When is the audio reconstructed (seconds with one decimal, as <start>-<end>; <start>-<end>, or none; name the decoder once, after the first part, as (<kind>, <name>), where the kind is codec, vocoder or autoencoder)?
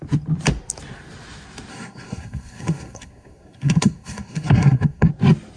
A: 1.7-5.1 (codec, SNAC)